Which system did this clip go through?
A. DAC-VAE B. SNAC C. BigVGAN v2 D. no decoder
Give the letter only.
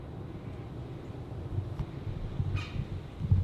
D